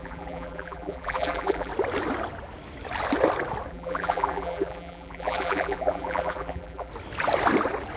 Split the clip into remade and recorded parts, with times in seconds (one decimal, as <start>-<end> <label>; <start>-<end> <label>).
0.0-1.7 remade; 1.7-3.7 recorded; 3.7-6.9 remade; 6.9-8.0 recorded